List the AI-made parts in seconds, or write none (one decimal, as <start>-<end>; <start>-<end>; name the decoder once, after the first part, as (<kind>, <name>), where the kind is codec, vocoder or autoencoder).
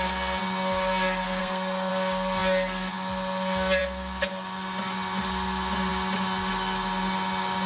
1.4-1.9 (codec, SNAC)